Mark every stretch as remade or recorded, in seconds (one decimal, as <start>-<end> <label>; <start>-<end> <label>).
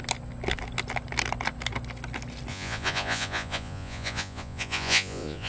0.0-2.5 recorded; 2.5-5.5 remade